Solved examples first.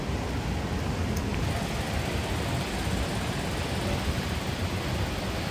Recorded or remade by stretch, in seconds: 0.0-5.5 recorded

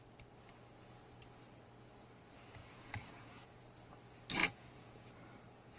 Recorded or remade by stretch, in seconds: 0.0-2.6 recorded; 2.6-3.6 remade; 3.6-4.4 recorded; 4.4-5.1 remade; 5.1-5.8 recorded

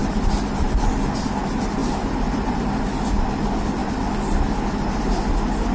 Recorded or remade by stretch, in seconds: 0.0-5.7 recorded

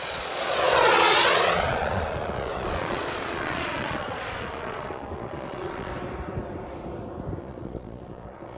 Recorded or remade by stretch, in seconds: 0.0-5.9 remade; 5.9-7.4 recorded; 7.4-8.6 remade

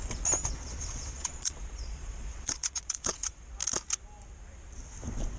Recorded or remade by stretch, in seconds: 0.0-0.4 recorded; 0.4-3.6 remade; 3.6-5.4 recorded